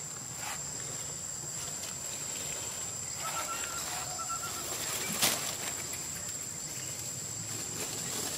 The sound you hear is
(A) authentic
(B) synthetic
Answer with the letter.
A